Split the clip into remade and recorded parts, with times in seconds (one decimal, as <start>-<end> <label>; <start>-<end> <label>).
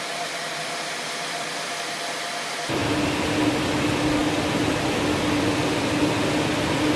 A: 0.0-7.0 recorded